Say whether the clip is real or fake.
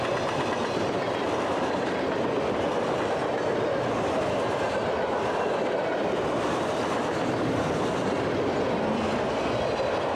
real